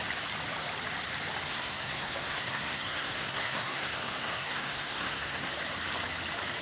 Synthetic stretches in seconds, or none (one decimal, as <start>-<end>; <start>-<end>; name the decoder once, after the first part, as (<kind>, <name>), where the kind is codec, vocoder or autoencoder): 1.5-5.5 (codec, SNAC)